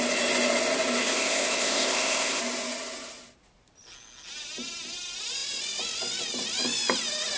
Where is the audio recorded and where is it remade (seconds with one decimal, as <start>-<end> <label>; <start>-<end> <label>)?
0.0-1.0 recorded; 1.0-2.4 remade; 2.4-7.4 recorded